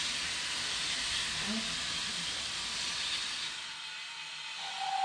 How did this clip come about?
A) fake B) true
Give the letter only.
B